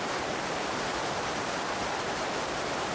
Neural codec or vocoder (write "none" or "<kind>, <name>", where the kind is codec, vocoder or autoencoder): vocoder, BigVGAN v2